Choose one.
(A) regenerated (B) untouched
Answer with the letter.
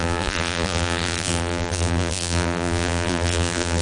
A